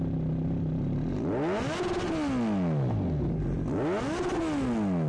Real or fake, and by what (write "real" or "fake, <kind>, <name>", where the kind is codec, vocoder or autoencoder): real